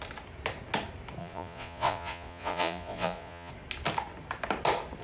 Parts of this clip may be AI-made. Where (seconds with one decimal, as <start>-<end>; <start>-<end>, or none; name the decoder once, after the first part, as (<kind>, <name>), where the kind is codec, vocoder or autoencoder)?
1.2-3.5 (vocoder, Vocos)